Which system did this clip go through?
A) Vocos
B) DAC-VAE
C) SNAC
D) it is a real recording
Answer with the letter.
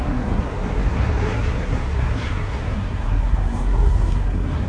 C